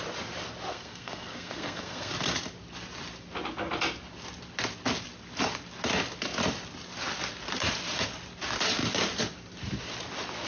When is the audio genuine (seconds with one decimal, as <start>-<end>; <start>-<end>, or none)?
0.0-0.7; 2.1-10.5